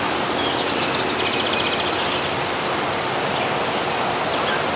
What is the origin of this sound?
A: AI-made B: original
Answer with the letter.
B